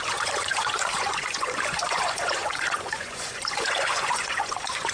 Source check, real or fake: fake